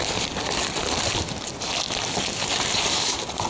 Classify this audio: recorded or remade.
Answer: recorded